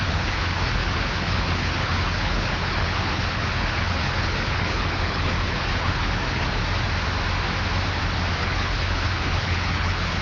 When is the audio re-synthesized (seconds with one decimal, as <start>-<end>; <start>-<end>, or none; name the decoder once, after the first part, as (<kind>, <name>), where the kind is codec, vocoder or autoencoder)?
0.0-6.6 (codec, HILCodec); 8.4-10.2